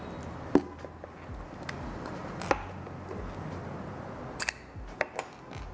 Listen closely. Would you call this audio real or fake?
real